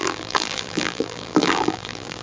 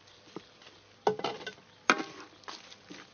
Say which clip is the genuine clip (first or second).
second